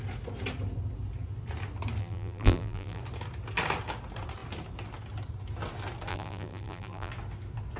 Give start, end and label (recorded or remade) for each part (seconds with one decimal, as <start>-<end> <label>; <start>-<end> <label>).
0.0-2.0 recorded; 2.0-3.0 remade; 3.0-6.1 recorded; 6.1-7.1 remade; 7.1-7.8 recorded